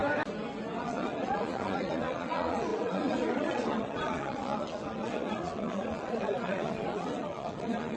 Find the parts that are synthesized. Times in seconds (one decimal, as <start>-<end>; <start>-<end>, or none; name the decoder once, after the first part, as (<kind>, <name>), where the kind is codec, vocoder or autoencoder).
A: 0.8-8.0 (vocoder, Vocos)